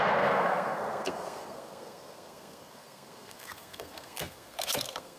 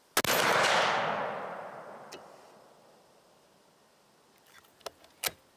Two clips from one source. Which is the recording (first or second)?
second